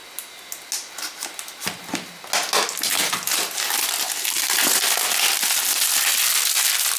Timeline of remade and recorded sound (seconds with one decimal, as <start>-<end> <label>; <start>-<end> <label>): 0.0-7.0 recorded